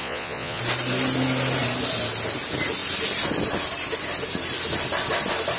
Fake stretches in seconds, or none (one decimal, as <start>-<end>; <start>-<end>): 0.0-0.6